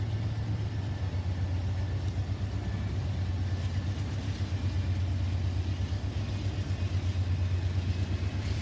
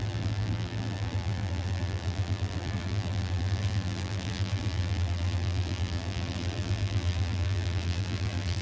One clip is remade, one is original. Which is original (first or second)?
first